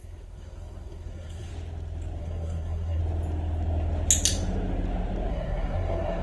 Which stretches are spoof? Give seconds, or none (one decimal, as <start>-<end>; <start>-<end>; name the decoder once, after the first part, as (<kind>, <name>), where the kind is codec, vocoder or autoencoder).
0.0-1.5 (codec, SNAC); 2.2-3.0; 5.3-6.2